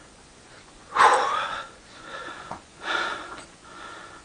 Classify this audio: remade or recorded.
remade